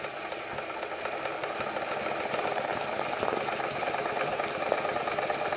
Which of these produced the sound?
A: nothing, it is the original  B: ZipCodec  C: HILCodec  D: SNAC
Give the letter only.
A